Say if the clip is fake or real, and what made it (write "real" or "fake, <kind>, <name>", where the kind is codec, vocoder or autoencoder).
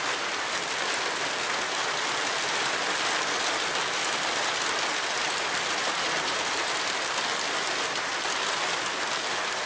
real